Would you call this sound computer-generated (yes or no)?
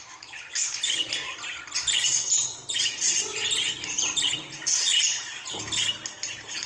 no